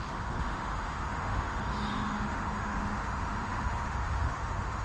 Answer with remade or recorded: remade